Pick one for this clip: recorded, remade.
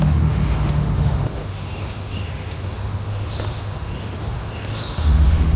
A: remade